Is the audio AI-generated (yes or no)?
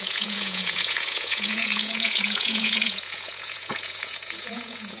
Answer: yes